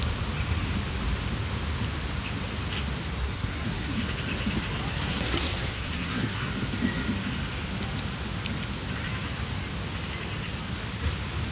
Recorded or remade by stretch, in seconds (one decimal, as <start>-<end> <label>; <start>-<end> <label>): 0.0-3.2 recorded; 3.2-4.0 remade; 4.0-4.9 recorded; 4.9-6.5 remade; 6.5-11.5 recorded